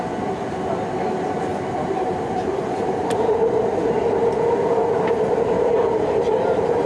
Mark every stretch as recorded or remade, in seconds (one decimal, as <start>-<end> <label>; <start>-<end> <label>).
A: 0.0-1.5 recorded; 1.5-3.5 remade; 3.5-6.9 recorded

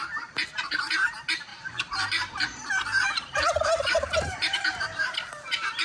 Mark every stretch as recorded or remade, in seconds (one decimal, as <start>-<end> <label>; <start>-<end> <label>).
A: 0.0-0.7 remade; 0.7-1.5 recorded; 1.5-5.0 remade; 5.0-5.8 recorded

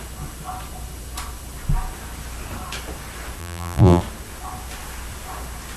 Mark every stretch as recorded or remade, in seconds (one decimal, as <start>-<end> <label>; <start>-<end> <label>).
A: 0.0-3.4 recorded; 3.4-4.0 remade; 4.0-5.8 recorded

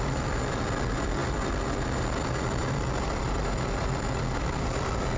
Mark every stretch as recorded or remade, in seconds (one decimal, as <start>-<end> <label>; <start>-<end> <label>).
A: 0.0-5.2 remade

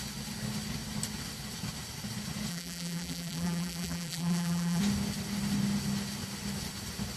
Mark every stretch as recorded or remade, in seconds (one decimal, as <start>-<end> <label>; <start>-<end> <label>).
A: 0.0-2.5 recorded; 2.5-4.8 remade; 4.8-7.2 recorded

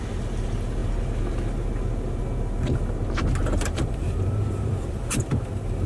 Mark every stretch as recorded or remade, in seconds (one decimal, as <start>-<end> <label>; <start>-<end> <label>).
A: 0.0-3.4 recorded; 3.4-5.9 remade

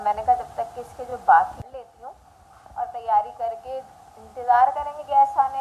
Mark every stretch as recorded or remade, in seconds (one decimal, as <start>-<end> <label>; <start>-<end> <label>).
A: 0.0-5.6 recorded

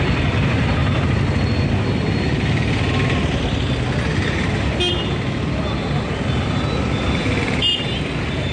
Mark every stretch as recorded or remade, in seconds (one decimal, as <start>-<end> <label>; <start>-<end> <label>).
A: 0.0-8.5 recorded